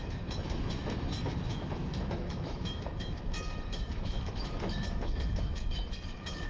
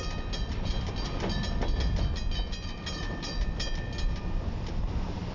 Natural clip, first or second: second